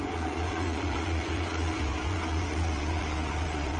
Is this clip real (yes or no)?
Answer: no